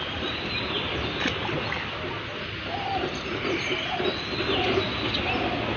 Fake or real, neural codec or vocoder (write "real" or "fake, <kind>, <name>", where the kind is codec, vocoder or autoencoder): real